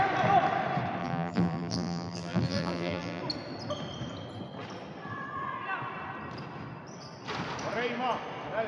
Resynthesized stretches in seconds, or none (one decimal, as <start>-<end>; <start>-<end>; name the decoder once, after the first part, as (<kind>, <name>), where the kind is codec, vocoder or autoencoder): 1.0-3.2 (vocoder, BigVGAN v2)